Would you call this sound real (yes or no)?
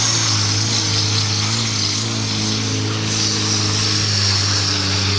yes